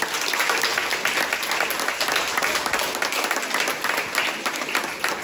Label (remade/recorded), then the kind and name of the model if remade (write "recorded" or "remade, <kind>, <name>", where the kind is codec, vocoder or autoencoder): recorded